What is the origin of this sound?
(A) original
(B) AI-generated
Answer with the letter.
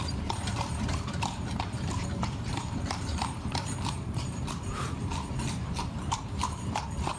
B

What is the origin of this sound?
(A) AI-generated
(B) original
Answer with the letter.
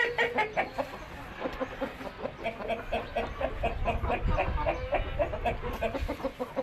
B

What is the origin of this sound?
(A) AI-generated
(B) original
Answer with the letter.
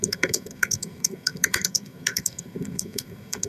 A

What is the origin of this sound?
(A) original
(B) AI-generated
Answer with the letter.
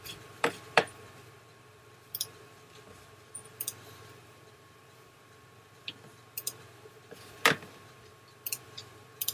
B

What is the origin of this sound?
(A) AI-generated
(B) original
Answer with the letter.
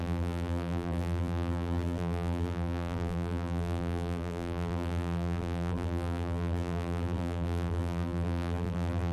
A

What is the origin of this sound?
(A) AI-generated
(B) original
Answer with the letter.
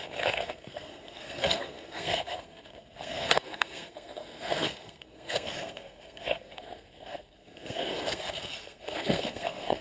A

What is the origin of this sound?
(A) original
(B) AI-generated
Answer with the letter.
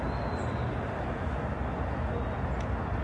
A